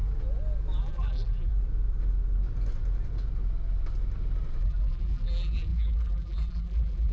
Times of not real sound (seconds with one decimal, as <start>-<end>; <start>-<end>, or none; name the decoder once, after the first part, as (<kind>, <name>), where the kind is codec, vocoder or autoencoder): 0.8-1.5 (vocoder, BigVGAN v2); 4.6-7.1